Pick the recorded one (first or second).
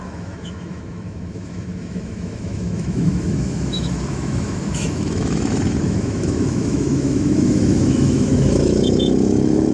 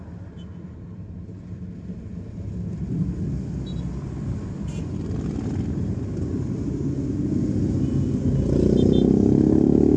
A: second